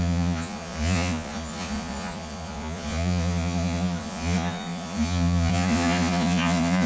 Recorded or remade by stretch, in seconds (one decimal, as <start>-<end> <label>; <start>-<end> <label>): 0.0-6.9 remade